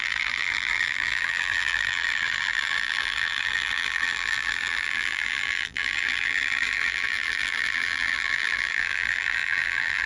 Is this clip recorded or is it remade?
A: remade